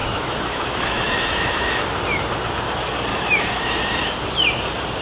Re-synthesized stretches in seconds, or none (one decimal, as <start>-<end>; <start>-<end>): 0.0-1.8; 3.1-3.7